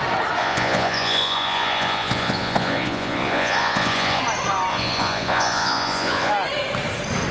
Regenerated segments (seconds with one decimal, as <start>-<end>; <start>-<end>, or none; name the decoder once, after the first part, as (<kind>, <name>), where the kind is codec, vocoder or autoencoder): 0.4-4.2 (vocoder, Vocos); 4.7-6.3

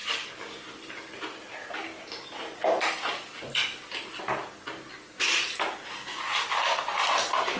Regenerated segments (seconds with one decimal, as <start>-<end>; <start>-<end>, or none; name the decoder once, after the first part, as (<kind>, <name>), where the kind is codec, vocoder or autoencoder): none

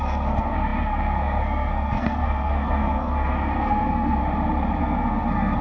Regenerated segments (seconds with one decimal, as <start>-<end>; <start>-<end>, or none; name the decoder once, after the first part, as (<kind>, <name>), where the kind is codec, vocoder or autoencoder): 0.0-4.2 (codec, SNAC); 4.8-5.6

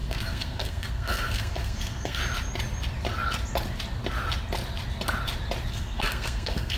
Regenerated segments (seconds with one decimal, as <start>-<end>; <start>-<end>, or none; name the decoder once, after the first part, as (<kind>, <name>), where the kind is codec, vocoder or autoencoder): 0.0-2.2 (codec, SNAC); 5.7-6.8